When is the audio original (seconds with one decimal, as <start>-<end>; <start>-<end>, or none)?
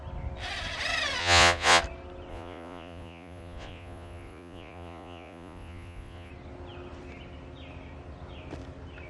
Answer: 0.0-1.2; 1.8-2.3; 6.3-9.1